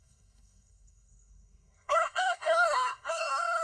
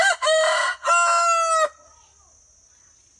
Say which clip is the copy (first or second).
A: first